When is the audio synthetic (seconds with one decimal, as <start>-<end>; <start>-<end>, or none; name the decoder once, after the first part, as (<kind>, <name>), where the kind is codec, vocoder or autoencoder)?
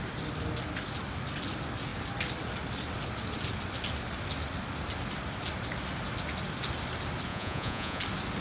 7.3-8.0 (vocoder, Vocos)